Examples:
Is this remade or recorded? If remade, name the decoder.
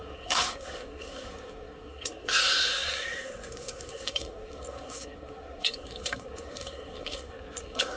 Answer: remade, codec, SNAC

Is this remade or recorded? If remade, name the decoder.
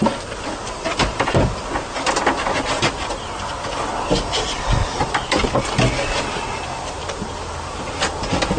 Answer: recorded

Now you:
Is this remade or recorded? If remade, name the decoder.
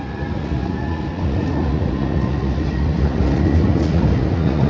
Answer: remade, vocoder, Vocos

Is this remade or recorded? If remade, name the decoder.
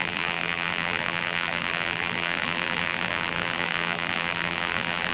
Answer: remade, vocoder, BigVGAN v2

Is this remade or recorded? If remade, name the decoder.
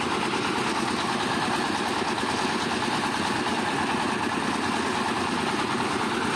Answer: recorded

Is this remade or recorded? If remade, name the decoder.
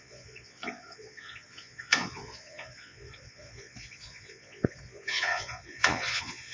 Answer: remade, vocoder, Vocos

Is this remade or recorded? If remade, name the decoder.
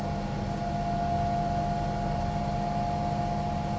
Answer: recorded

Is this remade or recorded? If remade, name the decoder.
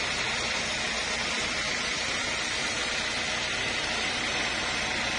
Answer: recorded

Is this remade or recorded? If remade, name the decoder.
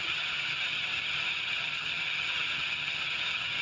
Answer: remade, vocoder, HiFi-GAN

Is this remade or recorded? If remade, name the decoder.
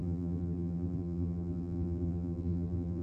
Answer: remade, vocoder, BigVGAN v2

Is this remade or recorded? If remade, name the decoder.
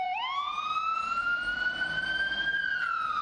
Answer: remade, vocoder, BigVGAN v2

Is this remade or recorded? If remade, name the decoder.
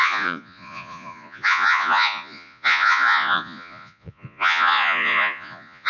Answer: remade, vocoder, Vocos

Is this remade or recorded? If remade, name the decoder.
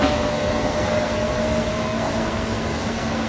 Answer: remade, codec, SNAC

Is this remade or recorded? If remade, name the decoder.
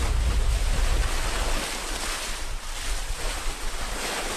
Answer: recorded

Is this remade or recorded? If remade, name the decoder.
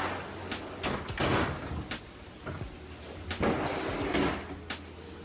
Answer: recorded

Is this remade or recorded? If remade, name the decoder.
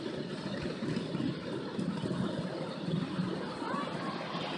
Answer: recorded